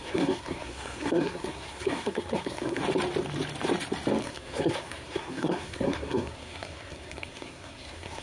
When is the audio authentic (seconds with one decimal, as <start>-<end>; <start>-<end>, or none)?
2.8-4.2